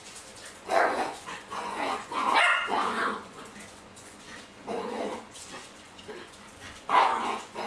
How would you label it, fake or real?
fake